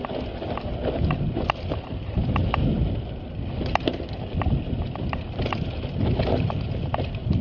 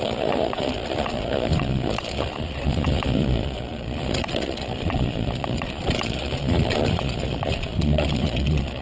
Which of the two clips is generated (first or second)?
second